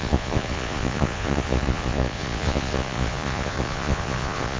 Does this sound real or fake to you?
fake